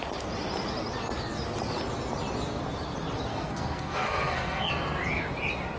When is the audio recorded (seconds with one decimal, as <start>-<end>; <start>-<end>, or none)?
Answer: 0.0-3.3; 4.7-5.8